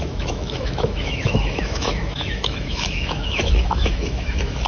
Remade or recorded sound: remade